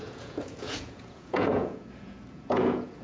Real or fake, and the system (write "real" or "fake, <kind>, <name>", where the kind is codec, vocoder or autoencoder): fake, vocoder, Vocos